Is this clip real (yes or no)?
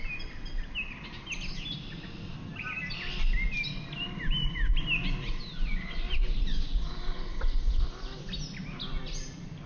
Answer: yes